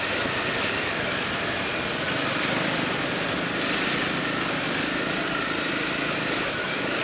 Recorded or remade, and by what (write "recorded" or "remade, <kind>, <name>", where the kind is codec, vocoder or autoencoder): recorded